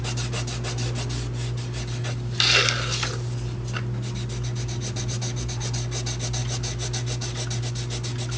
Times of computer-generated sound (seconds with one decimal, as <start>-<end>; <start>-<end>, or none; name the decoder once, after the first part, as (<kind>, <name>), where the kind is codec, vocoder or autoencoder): none